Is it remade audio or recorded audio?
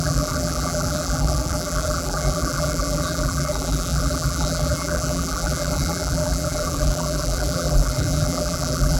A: remade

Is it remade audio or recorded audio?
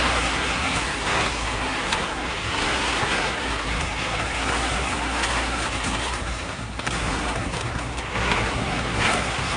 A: remade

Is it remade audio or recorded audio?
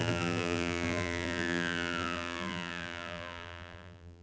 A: remade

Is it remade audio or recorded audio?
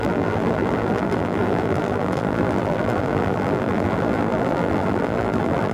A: remade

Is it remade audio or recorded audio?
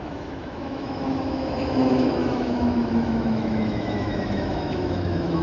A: remade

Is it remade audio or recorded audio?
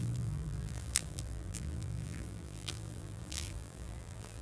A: remade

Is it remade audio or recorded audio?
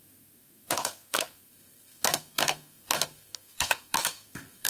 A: remade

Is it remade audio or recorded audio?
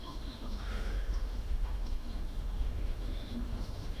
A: remade